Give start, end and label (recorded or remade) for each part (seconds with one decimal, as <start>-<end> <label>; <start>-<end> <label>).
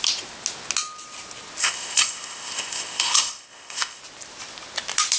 0.0-1.6 recorded; 1.6-4.0 remade; 4.0-5.2 recorded